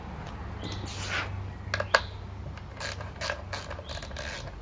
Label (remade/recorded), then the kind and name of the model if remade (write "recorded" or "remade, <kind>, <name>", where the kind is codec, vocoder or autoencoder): recorded